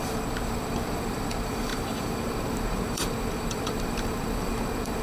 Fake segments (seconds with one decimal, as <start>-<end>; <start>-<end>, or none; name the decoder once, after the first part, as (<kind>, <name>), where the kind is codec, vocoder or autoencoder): 0.0-5.0 (vocoder, BigVGAN v2)